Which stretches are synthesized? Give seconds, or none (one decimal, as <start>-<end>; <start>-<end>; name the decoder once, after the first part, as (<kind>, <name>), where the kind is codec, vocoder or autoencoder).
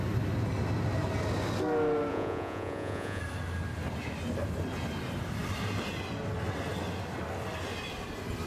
2.1-3.2 (vocoder, Vocos)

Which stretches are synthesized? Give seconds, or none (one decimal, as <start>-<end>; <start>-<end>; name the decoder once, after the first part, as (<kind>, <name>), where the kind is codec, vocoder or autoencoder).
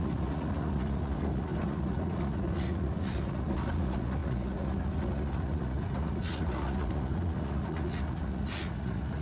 0.0-9.2 (vocoder, Vocos)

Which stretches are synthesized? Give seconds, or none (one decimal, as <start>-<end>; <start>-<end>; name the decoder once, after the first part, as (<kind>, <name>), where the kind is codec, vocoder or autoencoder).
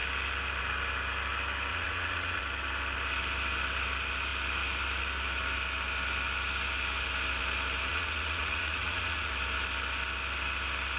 1.7-2.4 (vocoder, Vocos); 7.9-9.3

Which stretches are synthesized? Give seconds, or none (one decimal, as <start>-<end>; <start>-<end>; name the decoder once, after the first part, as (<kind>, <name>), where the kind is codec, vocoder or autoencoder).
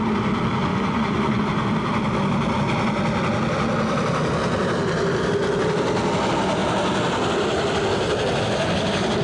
0.7-1.4 (vocoder, Vocos)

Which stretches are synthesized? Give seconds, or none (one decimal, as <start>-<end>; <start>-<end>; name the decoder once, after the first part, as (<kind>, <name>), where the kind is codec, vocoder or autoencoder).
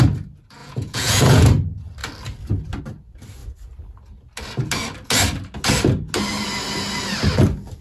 0.6-1.4 (vocoder, Vocos)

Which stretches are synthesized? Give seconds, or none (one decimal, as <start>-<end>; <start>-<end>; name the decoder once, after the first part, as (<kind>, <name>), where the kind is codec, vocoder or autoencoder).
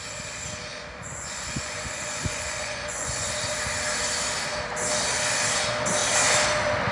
0.7-3.3 (vocoder, Vocos)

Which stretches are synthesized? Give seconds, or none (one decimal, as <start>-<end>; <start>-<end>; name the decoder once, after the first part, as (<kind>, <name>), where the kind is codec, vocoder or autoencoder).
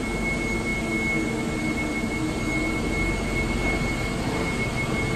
none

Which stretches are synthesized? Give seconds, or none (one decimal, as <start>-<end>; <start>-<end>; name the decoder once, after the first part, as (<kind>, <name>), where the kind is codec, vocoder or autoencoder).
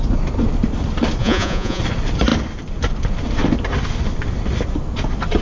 1.2-1.8 (vocoder, Vocos)